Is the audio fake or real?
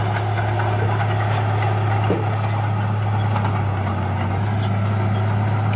real